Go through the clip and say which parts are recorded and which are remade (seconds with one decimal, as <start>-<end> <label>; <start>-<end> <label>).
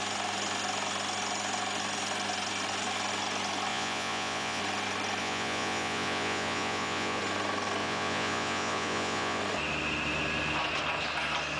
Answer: 0.0-3.7 recorded; 3.7-4.6 remade; 4.6-5.2 recorded; 5.2-7.2 remade; 7.2-7.8 recorded; 7.8-9.4 remade; 9.4-11.6 recorded